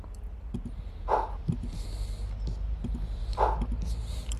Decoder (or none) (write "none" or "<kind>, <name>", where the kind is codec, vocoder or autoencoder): none